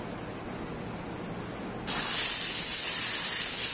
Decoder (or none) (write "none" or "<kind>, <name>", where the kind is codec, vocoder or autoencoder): none